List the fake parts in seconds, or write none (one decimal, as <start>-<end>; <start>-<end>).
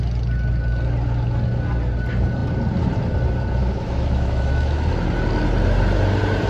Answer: 3.6-4.9